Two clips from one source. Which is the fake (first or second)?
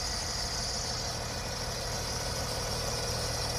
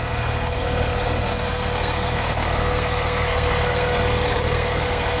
second